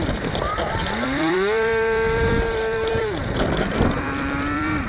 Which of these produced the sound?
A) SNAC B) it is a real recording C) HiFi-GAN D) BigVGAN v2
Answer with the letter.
D